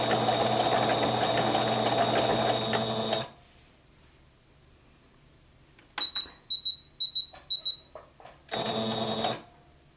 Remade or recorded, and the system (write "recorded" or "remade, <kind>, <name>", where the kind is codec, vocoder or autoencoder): recorded